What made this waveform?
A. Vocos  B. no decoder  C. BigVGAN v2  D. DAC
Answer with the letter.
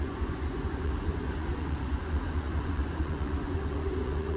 A